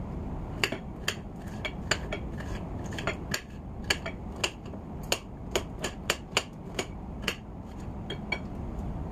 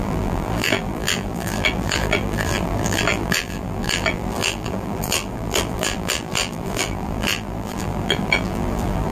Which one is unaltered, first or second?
first